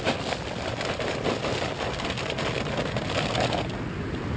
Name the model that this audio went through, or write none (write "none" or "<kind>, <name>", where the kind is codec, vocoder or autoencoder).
none